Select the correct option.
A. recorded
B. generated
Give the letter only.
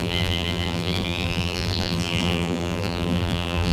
B